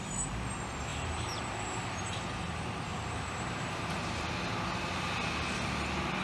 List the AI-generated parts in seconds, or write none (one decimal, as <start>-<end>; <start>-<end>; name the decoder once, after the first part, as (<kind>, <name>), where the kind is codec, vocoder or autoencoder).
0.9-2.2 (vocoder, BigVGAN v2); 2.9-4.2